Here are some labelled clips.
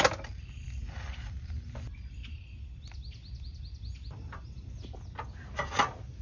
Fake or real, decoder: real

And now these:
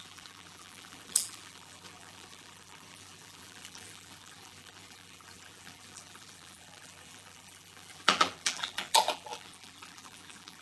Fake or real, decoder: fake, vocoder, BigVGAN v2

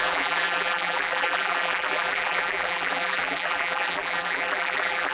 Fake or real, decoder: fake, vocoder, BigVGAN v2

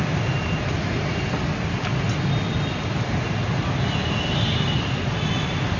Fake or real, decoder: real